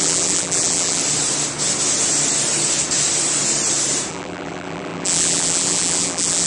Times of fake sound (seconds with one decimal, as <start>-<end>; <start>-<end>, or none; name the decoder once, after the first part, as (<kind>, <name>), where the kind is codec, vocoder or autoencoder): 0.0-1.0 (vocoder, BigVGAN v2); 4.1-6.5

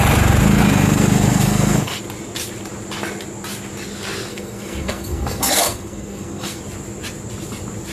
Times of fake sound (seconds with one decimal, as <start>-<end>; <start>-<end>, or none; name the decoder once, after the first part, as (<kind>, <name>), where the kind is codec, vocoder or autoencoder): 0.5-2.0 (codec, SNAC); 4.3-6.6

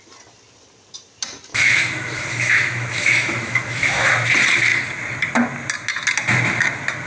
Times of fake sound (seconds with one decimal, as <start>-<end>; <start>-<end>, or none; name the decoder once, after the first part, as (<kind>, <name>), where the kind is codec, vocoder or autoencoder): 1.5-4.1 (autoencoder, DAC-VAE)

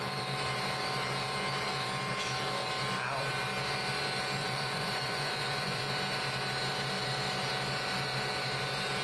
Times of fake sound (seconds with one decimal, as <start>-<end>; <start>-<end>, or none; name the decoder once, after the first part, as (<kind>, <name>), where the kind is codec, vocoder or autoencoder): 4.4-5.8 (vocoder, Vocos)

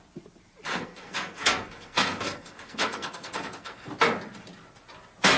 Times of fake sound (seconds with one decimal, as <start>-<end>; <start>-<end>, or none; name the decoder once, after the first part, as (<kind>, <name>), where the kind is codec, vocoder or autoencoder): 0.7-3.9 (codec, SNAC)